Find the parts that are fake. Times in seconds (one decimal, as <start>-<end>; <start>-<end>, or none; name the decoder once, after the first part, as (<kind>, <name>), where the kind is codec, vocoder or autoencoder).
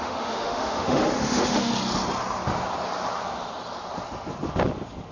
0.0-1.7 (autoencoder, DAC-VAE)